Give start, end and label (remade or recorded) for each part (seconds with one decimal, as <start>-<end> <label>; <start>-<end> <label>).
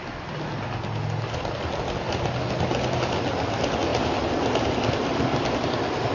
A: 0.0-6.1 recorded